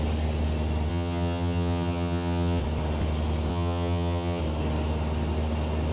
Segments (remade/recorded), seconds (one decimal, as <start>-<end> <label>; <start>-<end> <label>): 0.0-0.9 recorded; 0.9-2.6 remade; 2.6-3.5 recorded; 3.5-4.4 remade; 4.4-5.9 recorded